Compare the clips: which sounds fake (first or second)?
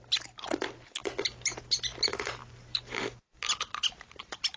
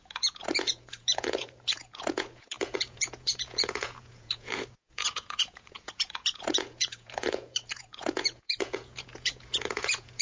second